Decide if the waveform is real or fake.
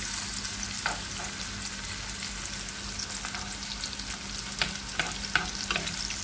real